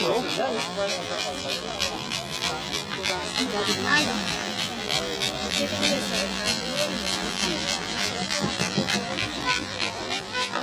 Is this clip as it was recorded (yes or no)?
no